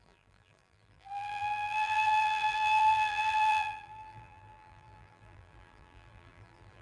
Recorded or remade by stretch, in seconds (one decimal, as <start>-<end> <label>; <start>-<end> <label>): 0.0-6.8 remade